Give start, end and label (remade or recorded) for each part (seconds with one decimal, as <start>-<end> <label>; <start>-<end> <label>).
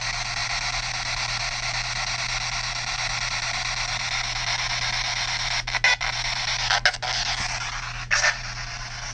0.0-9.1 recorded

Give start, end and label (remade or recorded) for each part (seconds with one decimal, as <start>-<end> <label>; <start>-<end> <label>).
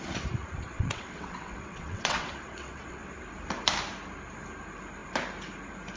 0.0-0.4 recorded; 0.4-3.2 remade; 3.2-6.0 recorded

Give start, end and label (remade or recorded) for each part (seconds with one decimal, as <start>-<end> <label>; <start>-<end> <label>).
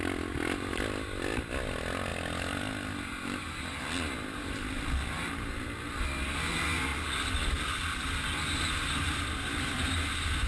0.0-10.5 recorded